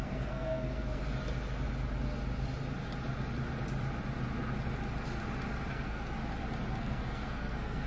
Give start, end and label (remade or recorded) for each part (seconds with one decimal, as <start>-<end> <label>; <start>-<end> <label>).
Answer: 0.0-1.0 remade; 1.0-5.7 recorded; 5.7-6.2 remade; 6.2-6.8 recorded; 6.8-7.9 remade